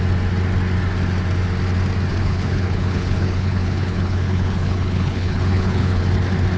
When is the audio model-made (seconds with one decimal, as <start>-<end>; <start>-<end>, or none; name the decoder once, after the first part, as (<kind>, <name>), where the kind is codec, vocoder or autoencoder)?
2.2-6.0 (codec, HILCodec)